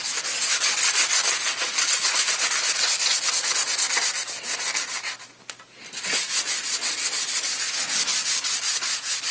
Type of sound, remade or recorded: recorded